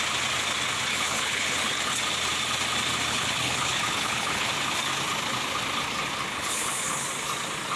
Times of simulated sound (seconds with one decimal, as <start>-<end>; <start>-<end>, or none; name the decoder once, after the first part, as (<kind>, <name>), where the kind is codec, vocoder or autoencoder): 0.9-2.0 (codec, HILCodec); 3.1-4.5; 6.3-7.1